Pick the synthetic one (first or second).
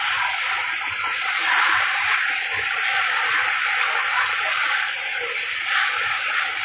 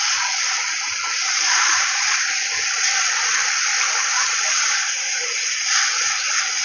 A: second